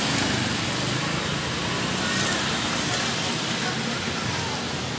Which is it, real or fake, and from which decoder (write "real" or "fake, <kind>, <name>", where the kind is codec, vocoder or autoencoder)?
real